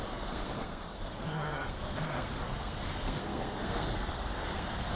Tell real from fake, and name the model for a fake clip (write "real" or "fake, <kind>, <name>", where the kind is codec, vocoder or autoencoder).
fake, codec, SNAC